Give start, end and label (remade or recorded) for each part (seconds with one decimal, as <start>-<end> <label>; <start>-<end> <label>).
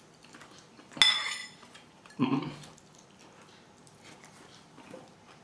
0.0-1.4 recorded; 1.4-2.4 remade; 2.4-5.4 recorded